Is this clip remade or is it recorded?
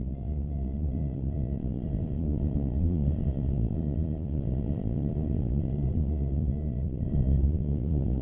remade